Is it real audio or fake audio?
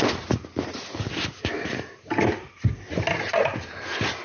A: real